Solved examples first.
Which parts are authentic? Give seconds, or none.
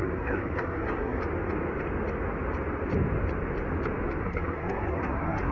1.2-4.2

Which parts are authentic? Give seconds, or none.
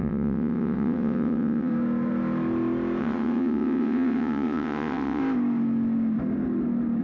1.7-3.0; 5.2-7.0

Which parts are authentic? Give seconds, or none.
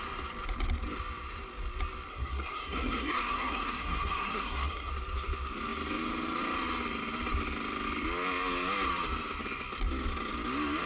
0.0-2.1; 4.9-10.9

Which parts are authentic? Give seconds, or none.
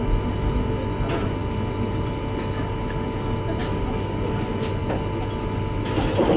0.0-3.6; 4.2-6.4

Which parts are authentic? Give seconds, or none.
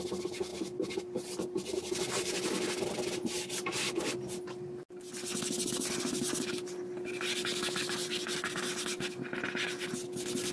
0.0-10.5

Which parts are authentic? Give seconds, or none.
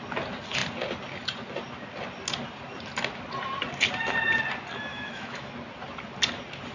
0.0-4.9; 5.5-6.7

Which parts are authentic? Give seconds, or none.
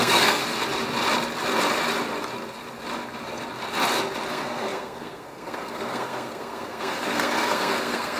0.4-4.3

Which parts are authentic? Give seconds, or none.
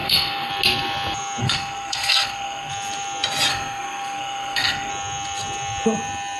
0.5-1.4; 2.7-3.5; 4.9-6.4